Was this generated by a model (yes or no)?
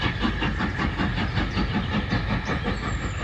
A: no